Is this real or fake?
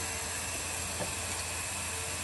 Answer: real